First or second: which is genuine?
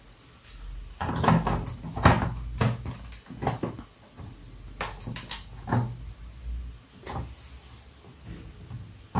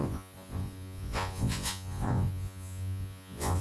first